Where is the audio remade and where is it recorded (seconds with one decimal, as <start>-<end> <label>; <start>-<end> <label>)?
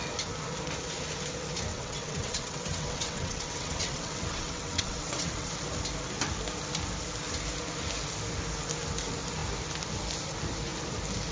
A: 0.0-1.7 recorded; 1.7-5.5 remade; 5.5-11.3 recorded